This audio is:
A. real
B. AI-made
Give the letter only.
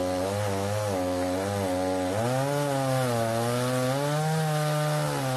A